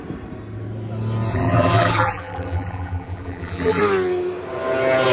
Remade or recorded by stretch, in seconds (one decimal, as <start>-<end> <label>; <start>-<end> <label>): 0.0-1.3 recorded; 1.3-3.8 remade; 3.8-5.1 recorded